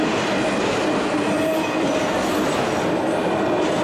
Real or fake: real